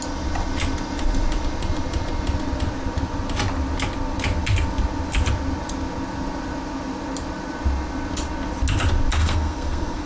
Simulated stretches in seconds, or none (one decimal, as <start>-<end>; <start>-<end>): 9.2-10.1